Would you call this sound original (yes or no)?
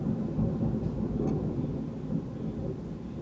yes